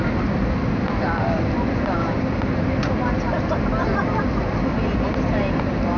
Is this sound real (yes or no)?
yes